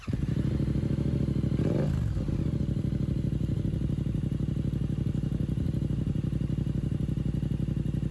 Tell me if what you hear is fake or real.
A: real